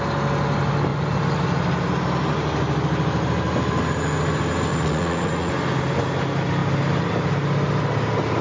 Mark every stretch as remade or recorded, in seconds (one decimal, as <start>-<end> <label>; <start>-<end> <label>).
0.0-4.7 recorded; 4.7-5.5 remade; 5.5-8.4 recorded